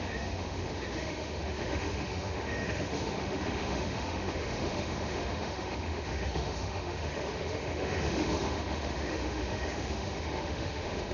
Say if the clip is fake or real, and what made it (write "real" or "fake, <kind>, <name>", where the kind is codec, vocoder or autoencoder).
fake, autoencoder, DAC-VAE